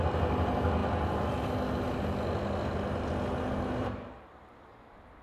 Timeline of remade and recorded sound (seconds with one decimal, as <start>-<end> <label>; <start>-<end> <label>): 0.0-5.2 recorded

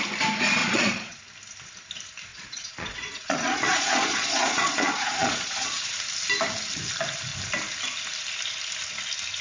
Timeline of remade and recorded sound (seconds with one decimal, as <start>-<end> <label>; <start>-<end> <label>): 0.0-0.6 recorded; 0.6-1.2 remade; 1.2-2.3 recorded; 2.3-5.9 remade; 5.9-9.4 recorded

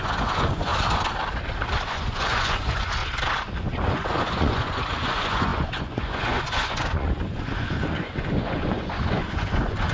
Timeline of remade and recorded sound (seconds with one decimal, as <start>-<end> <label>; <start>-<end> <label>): 0.0-0.7 remade; 0.7-1.9 recorded; 1.9-3.0 remade; 3.0-3.6 recorded; 3.6-9.9 remade